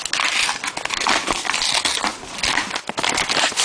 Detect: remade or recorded recorded